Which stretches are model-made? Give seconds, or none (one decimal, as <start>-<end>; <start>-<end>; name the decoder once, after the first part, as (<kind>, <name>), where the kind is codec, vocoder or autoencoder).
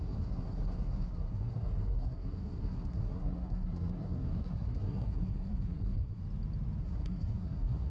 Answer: 0.0-6.2 (codec, SNAC); 6.8-7.9